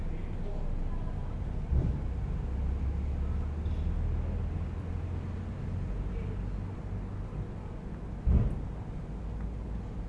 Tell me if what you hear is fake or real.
real